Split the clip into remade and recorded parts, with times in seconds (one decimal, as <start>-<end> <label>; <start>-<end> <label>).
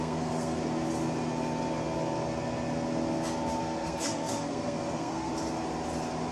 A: 0.0-0.6 remade; 0.6-3.6 recorded; 3.6-5.3 remade; 5.3-6.3 recorded